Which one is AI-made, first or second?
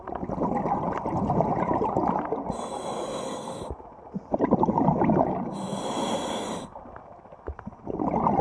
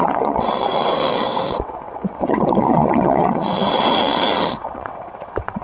second